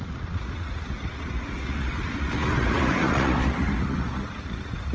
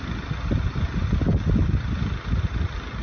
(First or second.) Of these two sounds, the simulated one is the first